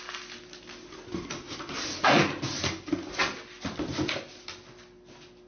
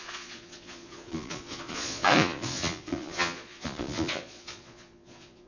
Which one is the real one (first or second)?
first